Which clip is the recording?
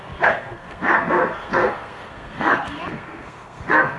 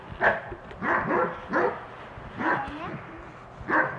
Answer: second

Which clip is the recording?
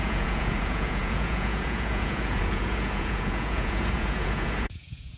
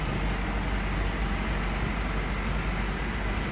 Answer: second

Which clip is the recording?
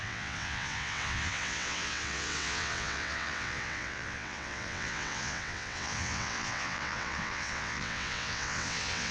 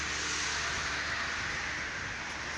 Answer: second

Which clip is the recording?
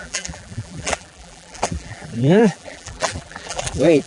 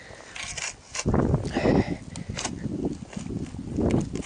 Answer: second